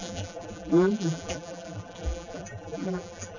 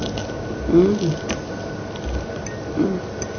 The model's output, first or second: first